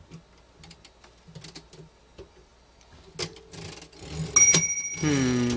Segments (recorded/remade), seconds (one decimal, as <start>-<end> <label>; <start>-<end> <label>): 0.0-5.6 recorded